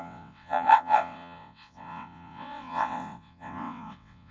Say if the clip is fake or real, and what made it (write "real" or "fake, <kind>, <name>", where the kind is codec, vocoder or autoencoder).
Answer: fake, vocoder, WaveNeXt